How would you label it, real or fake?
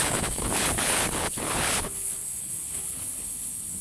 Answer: fake